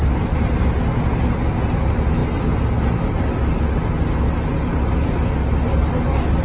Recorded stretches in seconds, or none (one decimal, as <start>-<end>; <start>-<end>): 0.0-6.4

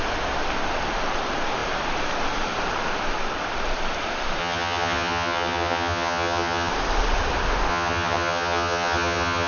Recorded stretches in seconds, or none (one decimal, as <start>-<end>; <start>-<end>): 0.0-4.4; 6.7-7.7

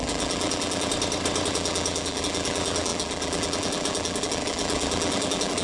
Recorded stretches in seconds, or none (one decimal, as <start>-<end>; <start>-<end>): 0.9-1.5

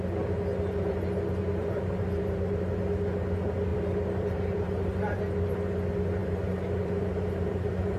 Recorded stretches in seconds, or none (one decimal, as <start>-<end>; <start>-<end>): 0.0-1.6; 2.8-3.7; 5.2-6.2

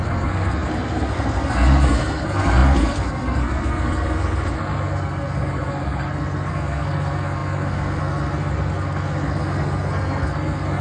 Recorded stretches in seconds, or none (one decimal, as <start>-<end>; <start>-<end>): none

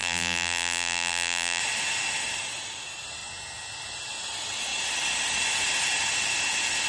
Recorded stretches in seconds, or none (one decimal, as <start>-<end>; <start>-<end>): 1.6-6.9

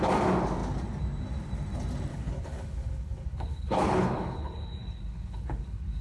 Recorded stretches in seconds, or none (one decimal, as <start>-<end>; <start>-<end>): 0.0-2.1